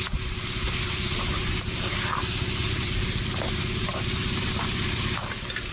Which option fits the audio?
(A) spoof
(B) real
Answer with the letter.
B